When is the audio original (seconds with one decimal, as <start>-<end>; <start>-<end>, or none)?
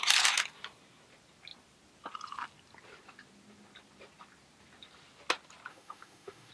0.0-5.7